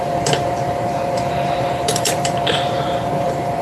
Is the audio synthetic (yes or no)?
yes